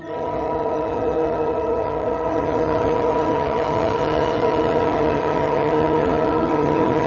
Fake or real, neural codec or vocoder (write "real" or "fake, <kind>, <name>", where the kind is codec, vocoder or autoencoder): fake, vocoder, HiFi-GAN